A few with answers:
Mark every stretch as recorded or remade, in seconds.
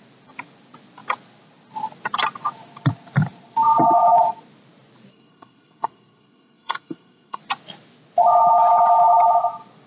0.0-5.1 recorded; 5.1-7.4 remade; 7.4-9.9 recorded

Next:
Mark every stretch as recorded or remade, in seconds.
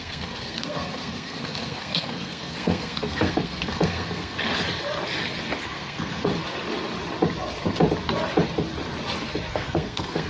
0.0-4.4 remade; 4.4-5.6 recorded; 5.6-6.3 remade; 6.3-9.5 recorded; 9.5-10.3 remade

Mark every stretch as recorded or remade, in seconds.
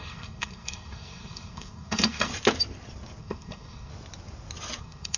0.0-2.3 remade; 2.3-3.2 recorded; 3.2-3.9 remade; 3.9-4.8 recorded; 4.8-5.2 remade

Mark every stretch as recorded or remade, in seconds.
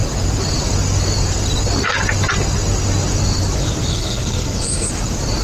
0.0-3.9 recorded; 3.9-4.9 remade; 4.9-5.4 recorded